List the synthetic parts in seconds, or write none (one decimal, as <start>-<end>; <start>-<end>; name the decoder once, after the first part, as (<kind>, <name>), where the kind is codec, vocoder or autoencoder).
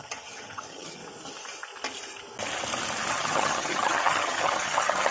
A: 0.0-1.0 (vocoder, HiFi-GAN); 3.1-5.1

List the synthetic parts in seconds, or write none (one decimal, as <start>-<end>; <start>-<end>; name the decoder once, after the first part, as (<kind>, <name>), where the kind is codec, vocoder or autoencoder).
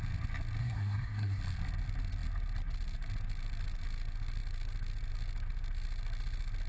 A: 0.6-1.4 (codec, SNAC)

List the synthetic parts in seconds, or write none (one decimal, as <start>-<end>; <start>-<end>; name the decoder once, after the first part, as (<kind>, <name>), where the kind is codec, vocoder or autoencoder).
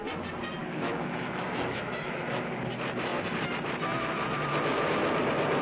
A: 0.6-2.4 (autoencoder, DAC-VAE)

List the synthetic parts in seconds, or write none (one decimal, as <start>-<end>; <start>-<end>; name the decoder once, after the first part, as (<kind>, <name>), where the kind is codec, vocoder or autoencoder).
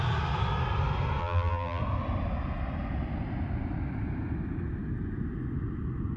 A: 1.2-1.8 (vocoder, BigVGAN v2)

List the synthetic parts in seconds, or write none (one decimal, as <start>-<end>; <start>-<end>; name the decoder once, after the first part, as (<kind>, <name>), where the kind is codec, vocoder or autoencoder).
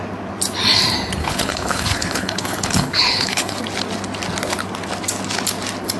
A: 1.2-3.6 (codec, HILCodec)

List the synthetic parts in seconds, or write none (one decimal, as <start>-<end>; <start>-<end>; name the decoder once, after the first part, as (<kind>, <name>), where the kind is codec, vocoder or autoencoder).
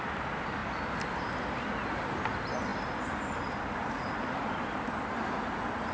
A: 0.6-1.1 (vocoder, BigVGAN v2); 2.7-4.8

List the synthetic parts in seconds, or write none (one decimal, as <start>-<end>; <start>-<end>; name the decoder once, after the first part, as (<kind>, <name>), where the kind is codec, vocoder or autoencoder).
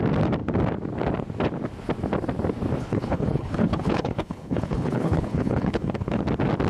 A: 2.8-6.2 (codec, HILCodec)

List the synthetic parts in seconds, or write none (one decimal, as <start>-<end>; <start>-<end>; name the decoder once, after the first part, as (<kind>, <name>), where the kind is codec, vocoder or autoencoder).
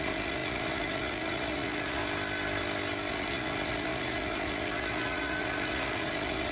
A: 0.0-2.0 (vocoder, Vocos); 3.1-6.5